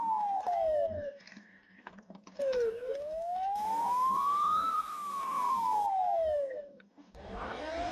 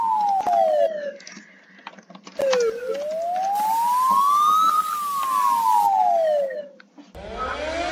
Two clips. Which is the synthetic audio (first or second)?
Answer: first